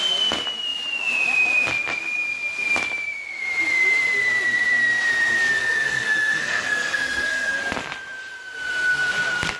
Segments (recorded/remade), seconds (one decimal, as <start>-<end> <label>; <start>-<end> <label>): 0.0-5.6 recorded; 5.6-7.6 remade; 7.6-9.6 recorded